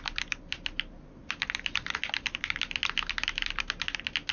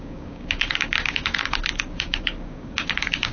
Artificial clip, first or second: second